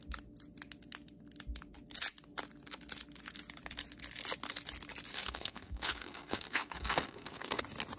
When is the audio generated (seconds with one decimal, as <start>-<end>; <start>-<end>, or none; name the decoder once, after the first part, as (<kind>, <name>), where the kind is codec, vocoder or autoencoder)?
5.1-7.6 (codec, SNAC)